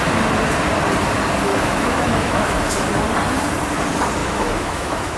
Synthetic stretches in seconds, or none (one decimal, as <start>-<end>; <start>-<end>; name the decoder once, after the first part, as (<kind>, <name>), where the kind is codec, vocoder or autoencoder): 1.5-2.9 (autoencoder, DAC-VAE); 4.2-5.2